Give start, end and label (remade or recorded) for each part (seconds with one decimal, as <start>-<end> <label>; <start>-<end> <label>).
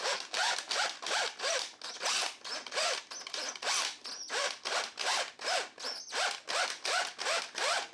0.0-7.9 recorded